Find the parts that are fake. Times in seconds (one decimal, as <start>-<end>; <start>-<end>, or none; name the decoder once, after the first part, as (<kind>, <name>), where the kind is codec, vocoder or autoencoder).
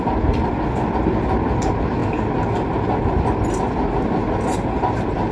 none